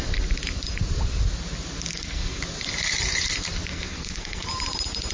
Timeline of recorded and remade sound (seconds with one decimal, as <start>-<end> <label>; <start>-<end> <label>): 0.0-1.9 recorded; 1.9-2.4 remade; 2.4-3.7 recorded; 3.7-4.5 remade; 4.5-5.1 recorded